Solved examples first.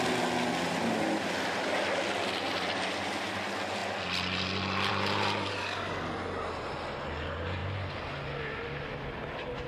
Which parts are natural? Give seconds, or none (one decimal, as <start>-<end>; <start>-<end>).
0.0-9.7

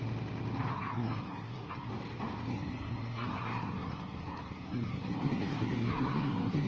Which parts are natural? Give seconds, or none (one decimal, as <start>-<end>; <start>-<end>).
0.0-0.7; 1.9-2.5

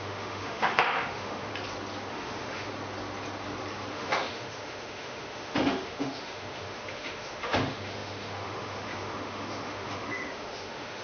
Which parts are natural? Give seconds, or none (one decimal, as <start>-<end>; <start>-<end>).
1.5-2.1; 2.7-3.9

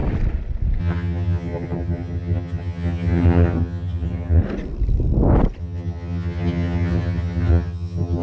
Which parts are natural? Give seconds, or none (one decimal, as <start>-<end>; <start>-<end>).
0.0-0.8; 4.4-5.6

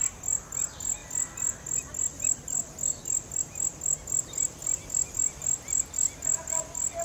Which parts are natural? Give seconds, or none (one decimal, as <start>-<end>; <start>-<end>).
0.0-7.0

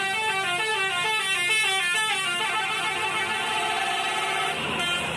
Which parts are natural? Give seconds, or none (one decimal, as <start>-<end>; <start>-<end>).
0.7-3.8

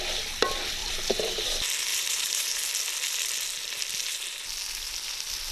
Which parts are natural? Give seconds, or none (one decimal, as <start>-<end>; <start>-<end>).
0.0-0.8; 1.5-1.9; 2.6-5.5